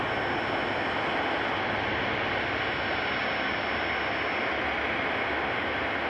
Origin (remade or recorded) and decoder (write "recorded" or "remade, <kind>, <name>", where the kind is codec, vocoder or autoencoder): recorded